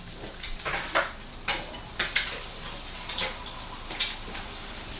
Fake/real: real